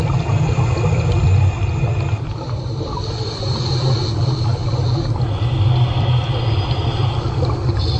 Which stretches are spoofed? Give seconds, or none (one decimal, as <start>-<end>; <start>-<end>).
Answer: none